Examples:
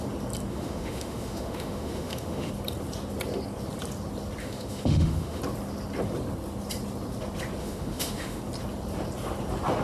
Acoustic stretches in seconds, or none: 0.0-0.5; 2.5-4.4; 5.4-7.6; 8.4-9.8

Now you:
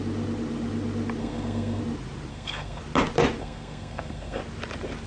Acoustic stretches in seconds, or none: 0.0-1.2; 1.8-2.3; 2.8-3.4; 4.4-5.1

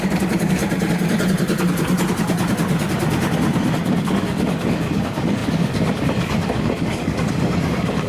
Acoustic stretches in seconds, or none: 0.6-4.0

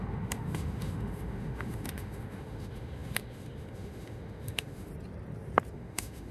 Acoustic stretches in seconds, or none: 4.9-5.7

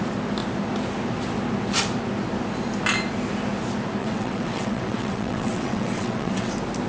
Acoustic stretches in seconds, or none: 0.0-4.0; 6.5-6.9

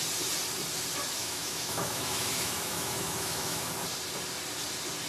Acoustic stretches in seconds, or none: 0.0-1.2; 3.7-5.1

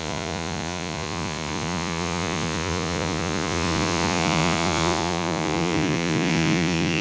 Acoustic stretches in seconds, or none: none

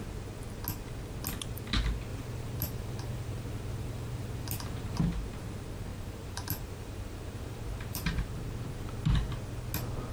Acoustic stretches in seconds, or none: 0.0-2.1; 5.0-5.9; 8.9-10.1